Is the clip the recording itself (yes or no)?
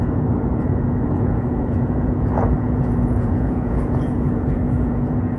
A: no